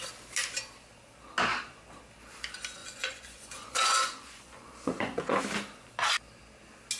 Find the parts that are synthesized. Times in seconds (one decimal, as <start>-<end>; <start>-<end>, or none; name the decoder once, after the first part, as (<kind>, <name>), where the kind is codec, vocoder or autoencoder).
2.8-5.4 (vocoder, Vocos)